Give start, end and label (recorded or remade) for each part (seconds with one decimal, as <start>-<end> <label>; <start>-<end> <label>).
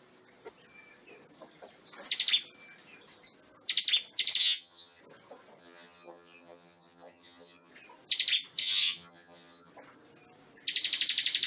0.0-4.4 recorded; 4.4-5.0 remade; 5.0-5.6 recorded; 5.6-7.7 remade; 7.7-8.6 recorded; 8.6-9.7 remade; 9.7-11.5 recorded